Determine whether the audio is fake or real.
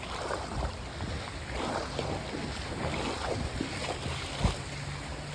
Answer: real